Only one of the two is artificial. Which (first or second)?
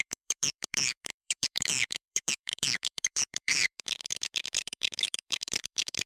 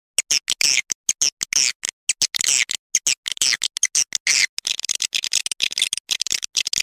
first